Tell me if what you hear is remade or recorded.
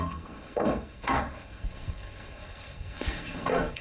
remade